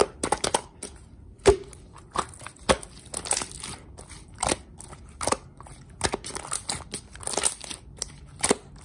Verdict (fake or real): real